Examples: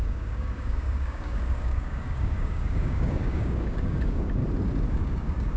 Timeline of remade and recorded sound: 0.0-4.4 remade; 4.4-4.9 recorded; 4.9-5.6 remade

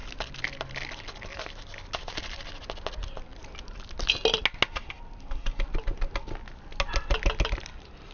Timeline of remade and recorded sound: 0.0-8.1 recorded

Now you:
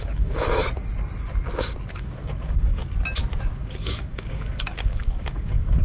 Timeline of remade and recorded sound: 0.0-0.6 remade; 0.6-1.9 recorded; 1.9-2.8 remade; 2.8-3.4 recorded; 3.4-5.8 remade

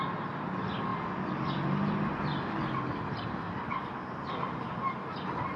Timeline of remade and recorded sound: 0.0-5.6 recorded